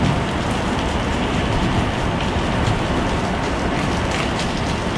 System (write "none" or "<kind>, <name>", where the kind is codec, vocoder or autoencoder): none